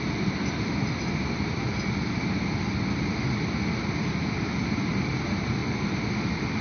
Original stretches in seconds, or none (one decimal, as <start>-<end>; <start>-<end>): 0.0-6.6